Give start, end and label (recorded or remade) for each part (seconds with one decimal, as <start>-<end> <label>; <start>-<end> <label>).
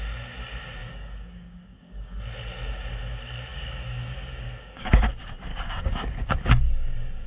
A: 0.0-0.8 recorded; 0.8-2.2 remade; 2.2-3.5 recorded; 3.5-4.9 remade; 4.9-5.5 recorded; 5.5-7.3 remade